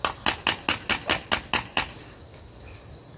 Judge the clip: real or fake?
real